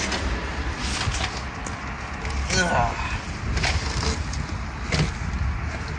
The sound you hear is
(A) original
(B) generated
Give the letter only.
A